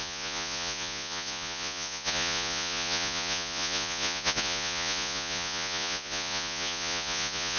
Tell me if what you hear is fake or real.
fake